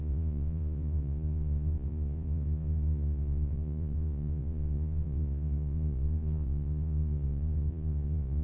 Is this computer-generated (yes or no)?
yes